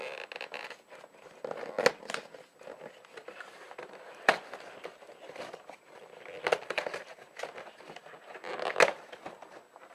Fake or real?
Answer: real